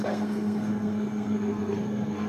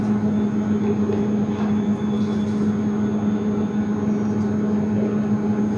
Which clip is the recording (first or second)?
second